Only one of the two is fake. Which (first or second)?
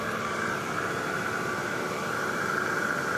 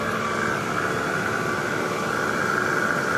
first